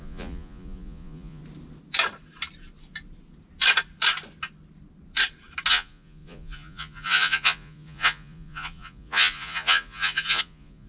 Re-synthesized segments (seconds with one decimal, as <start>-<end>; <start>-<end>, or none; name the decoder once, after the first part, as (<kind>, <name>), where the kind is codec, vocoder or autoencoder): 0.0-1.4 (vocoder, Vocos); 5.7-10.9